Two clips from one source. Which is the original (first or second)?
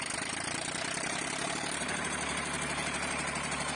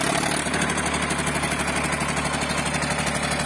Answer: second